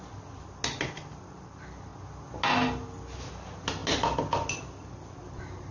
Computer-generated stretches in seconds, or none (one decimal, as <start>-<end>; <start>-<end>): none